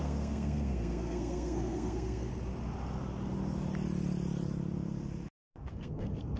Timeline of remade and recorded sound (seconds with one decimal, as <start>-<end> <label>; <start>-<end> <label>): 0.0-2.3 remade; 2.3-5.7 recorded; 5.7-6.4 remade